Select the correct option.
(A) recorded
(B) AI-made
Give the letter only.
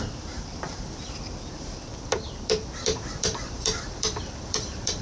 B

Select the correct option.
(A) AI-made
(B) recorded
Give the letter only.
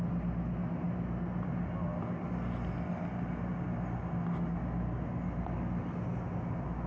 B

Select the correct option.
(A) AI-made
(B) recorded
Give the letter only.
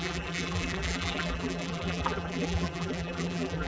A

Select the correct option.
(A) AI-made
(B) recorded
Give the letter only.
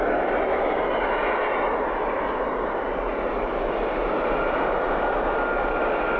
B